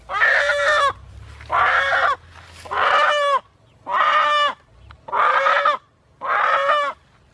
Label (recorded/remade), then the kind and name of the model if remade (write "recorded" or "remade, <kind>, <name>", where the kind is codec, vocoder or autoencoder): recorded